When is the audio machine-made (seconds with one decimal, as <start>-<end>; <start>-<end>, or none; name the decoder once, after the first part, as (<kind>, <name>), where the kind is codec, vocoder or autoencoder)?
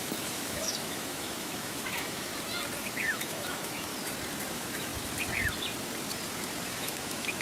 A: 0.0-2.3 (autoencoder, DAC-VAE); 2.9-3.9; 4.5-4.9; 6.7-7.4